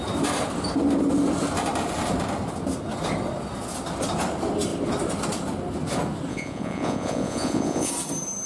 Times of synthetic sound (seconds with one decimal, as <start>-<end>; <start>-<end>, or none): 6.3-7.9